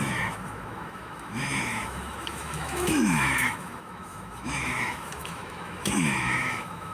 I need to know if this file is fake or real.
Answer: fake